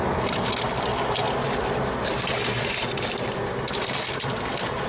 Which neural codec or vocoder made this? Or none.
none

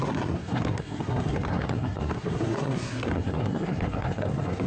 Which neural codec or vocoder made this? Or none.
codec, SNAC